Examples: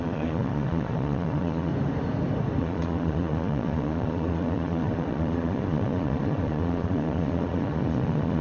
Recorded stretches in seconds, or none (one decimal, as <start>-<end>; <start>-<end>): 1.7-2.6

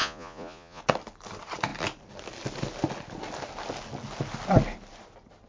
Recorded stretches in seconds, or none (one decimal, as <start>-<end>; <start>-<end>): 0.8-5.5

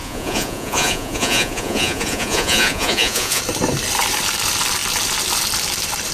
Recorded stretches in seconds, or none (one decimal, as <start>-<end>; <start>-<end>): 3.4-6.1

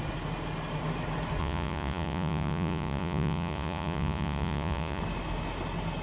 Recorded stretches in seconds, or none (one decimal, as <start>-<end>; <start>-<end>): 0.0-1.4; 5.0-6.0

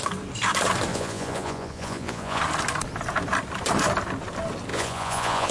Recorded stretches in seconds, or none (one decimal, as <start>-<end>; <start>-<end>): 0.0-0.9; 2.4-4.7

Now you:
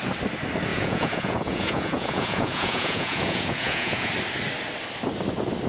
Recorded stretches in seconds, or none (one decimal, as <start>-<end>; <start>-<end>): 0.0-0.7; 4.1-5.7

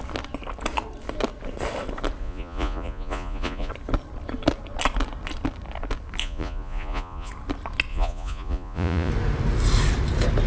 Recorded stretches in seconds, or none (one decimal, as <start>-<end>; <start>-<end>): 0.0-2.2; 3.7-6.2; 7.3-7.9; 9.1-10.5